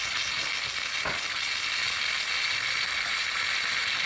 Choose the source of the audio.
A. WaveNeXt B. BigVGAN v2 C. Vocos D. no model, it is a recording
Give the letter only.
D